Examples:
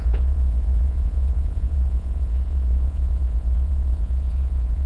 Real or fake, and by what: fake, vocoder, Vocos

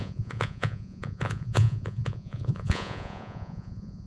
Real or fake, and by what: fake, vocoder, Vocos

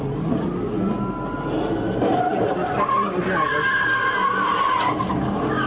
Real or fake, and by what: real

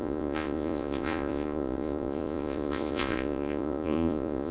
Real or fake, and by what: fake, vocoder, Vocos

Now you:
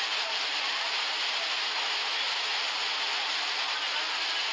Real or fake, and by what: real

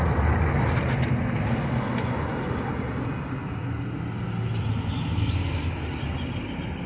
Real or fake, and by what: real